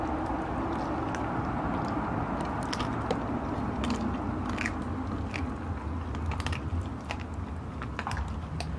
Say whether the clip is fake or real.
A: real